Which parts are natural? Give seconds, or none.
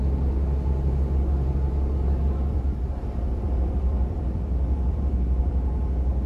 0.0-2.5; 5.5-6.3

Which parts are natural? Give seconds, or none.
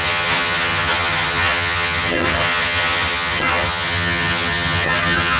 none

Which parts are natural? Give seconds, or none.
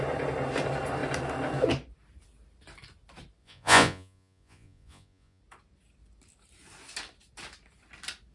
0.0-3.4; 5.4-8.3